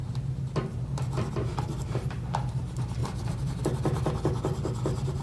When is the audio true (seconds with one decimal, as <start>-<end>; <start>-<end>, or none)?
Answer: 0.0-1.5; 2.4-3.0; 3.6-5.2